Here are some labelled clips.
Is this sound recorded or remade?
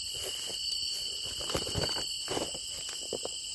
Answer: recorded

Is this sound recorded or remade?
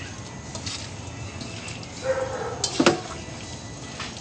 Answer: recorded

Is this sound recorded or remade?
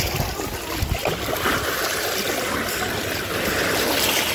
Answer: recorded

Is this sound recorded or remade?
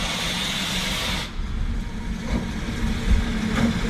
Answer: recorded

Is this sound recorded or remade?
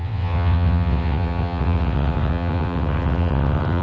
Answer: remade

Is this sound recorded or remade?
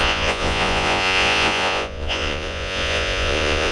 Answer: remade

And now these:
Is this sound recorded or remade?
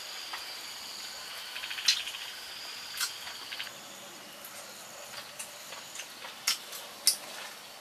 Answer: recorded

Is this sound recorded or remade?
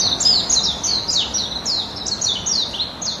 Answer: recorded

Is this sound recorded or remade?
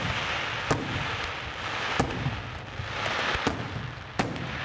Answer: recorded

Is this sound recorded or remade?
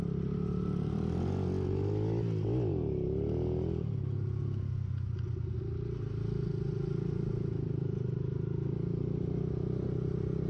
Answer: recorded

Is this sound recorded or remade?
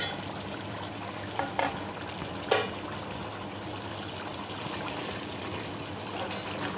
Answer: recorded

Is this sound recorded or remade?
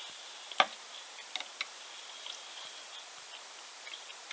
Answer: recorded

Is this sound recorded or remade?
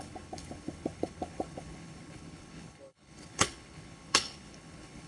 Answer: remade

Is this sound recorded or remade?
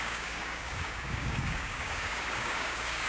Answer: remade